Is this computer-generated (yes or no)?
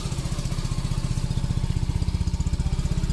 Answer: no